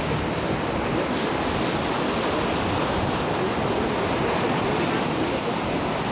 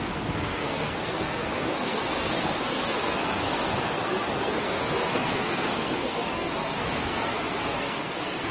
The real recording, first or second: first